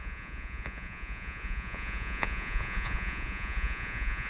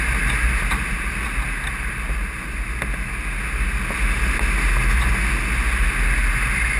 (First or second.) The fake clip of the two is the first